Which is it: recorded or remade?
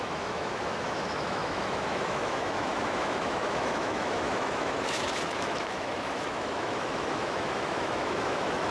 remade